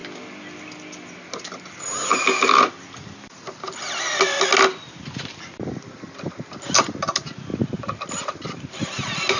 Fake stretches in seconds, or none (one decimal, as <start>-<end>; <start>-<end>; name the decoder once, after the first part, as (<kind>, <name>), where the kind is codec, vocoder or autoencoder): 7.5-8.8 (vocoder, BigVGAN v2)

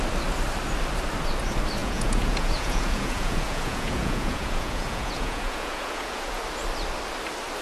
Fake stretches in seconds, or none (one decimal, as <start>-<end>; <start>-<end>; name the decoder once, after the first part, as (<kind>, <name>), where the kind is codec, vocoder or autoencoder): 1.8-6.4 (vocoder, Vocos)

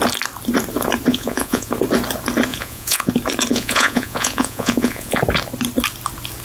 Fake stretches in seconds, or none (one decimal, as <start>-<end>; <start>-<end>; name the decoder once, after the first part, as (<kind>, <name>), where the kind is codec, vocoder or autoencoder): 1.1-1.7 (vocoder, Vocos); 2.5-3.1; 3.5-5.2

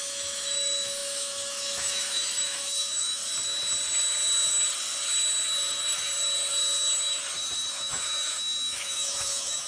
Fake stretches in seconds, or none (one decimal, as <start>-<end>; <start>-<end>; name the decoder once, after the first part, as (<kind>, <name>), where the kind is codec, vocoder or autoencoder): 0.0-3.2 (autoencoder, DAC-VAE); 7.7-9.7